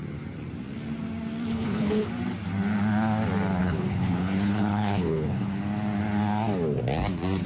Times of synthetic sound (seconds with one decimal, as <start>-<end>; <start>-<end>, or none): 1.5-2.1; 3.6-5.5